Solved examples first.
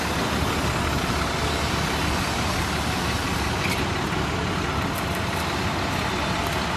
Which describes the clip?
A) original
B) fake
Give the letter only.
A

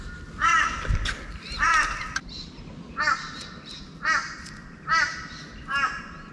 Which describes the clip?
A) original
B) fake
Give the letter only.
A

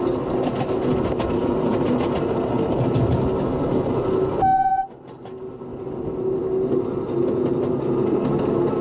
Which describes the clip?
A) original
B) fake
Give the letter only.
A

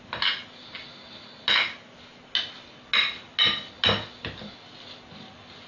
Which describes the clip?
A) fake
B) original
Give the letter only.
B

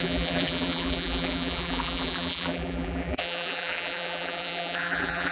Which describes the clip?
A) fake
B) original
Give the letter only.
A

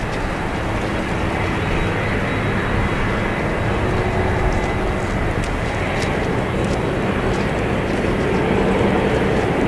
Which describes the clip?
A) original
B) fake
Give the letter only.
A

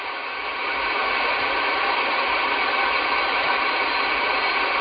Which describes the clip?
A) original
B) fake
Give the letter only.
A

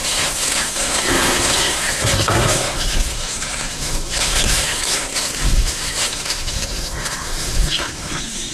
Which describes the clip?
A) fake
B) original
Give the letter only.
A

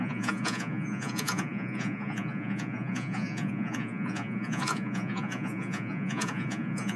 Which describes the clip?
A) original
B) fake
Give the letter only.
B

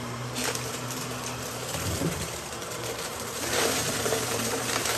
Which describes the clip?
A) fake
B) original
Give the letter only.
A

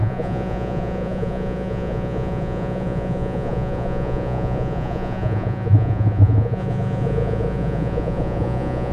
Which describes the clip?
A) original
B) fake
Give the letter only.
B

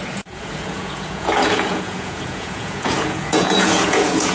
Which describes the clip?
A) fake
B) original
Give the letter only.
A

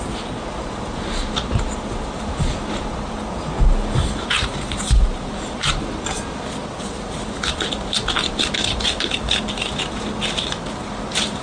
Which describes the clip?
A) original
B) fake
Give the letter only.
A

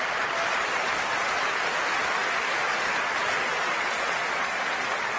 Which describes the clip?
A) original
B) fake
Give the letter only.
A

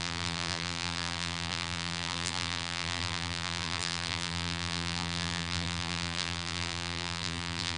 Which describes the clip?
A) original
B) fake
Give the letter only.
B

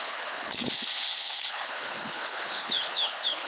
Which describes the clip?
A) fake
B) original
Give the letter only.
A